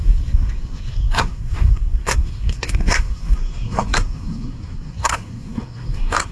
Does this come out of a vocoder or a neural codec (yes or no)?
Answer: yes